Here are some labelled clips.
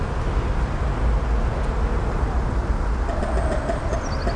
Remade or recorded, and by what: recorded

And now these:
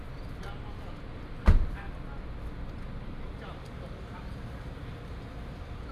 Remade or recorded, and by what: recorded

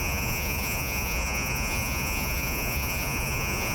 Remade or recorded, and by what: remade, vocoder, Vocos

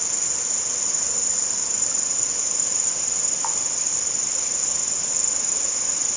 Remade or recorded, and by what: recorded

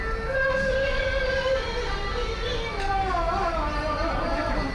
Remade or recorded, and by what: recorded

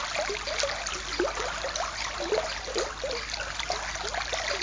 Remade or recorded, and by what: recorded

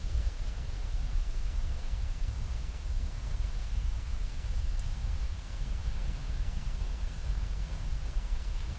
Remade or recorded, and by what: remade, codec, SNAC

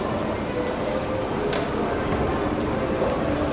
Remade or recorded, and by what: recorded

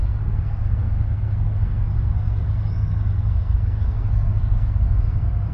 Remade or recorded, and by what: remade, codec, SNAC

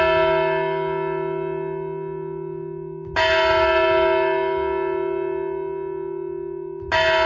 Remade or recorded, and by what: recorded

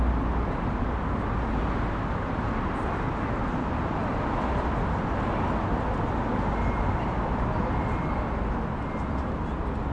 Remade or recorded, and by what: recorded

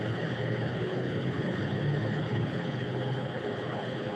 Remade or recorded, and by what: remade, codec, HILCodec